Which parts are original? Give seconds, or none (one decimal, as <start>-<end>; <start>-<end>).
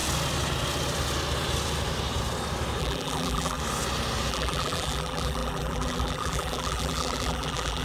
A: 0.0-2.8; 3.6-4.3